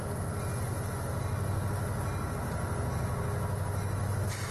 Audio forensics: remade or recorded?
recorded